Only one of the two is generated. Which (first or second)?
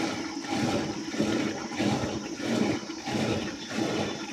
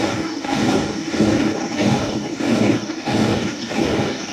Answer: second